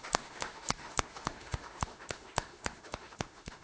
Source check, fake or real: fake